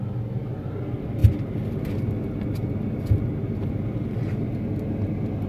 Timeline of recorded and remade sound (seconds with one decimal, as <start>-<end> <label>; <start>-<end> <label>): 0.0-5.5 recorded